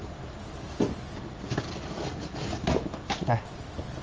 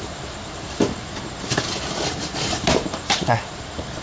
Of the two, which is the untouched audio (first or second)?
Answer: first